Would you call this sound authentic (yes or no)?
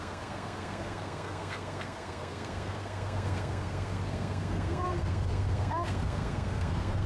no